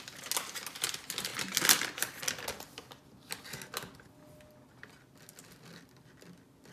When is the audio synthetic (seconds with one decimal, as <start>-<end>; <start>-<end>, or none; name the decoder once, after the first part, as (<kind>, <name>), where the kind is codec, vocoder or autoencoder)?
none